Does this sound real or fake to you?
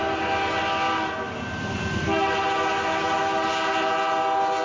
real